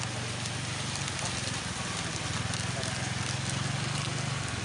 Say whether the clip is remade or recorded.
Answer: recorded